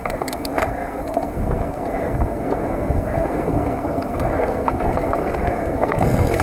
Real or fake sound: fake